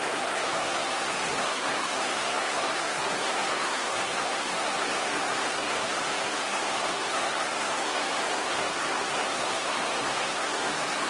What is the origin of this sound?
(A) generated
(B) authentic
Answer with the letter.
A